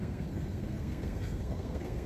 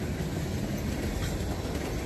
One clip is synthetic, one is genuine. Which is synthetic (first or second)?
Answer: first